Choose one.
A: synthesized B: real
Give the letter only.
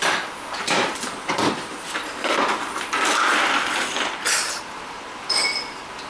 A